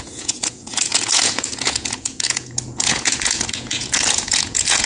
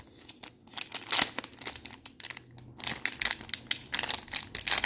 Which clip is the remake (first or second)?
first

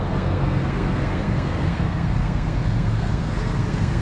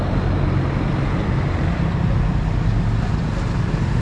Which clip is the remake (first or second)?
first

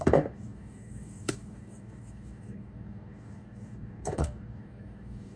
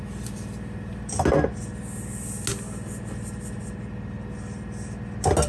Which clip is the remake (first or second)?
first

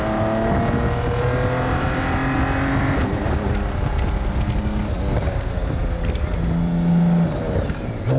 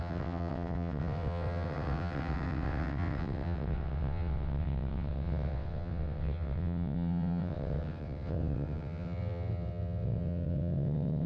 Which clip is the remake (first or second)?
second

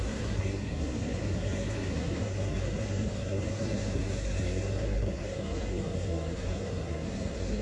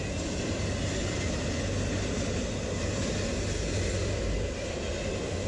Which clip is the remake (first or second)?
first